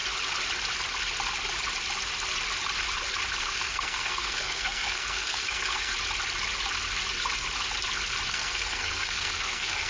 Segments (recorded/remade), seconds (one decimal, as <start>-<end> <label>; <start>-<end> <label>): 0.0-3.4 recorded; 3.4-5.9 remade; 5.9-8.3 recorded; 8.3-9.9 remade